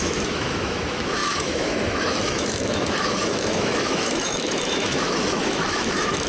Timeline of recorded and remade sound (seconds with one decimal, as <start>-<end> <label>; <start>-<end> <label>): 0.0-6.3 remade